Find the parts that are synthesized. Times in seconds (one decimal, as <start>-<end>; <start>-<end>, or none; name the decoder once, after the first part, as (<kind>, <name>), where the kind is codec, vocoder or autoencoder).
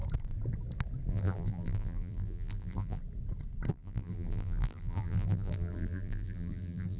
1.1-3.0 (vocoder, BigVGAN v2); 3.7-7.0